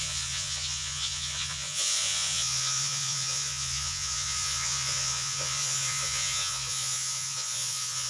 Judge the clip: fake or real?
fake